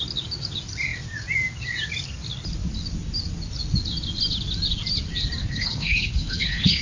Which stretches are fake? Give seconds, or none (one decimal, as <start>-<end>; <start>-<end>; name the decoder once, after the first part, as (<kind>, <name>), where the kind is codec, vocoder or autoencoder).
5.4-6.8 (codec, HILCodec)

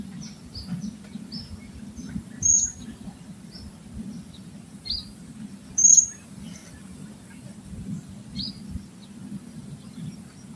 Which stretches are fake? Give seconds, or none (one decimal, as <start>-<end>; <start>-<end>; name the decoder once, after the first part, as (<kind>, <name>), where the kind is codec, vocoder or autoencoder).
none

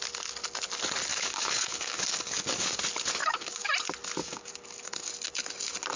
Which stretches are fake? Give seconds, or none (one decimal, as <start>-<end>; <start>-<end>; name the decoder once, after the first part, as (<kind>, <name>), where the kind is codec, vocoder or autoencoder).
1.1-2.8 (codec, DAC); 3.2-3.7; 4.2-5.1

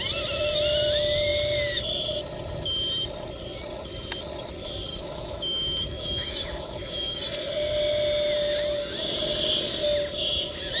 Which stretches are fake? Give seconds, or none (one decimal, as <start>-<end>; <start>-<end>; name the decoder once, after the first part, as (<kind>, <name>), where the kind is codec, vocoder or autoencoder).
4.9-7.2 (autoencoder, DAC-VAE)

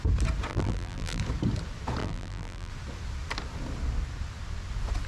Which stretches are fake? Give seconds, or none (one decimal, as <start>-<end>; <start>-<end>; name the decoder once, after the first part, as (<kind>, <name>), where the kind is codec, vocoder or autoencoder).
0.5-1.2 (vocoder, BigVGAN v2); 2.0-2.7

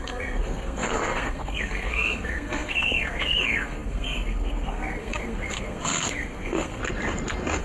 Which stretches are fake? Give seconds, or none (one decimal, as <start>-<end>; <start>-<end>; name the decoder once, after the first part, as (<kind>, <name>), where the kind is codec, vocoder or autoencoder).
0.0-6.8 (codec, SNAC)